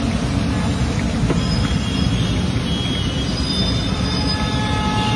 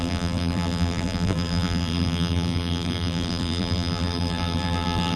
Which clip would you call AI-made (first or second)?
second